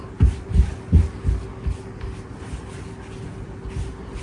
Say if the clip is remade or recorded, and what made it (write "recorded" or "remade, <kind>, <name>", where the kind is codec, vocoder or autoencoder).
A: recorded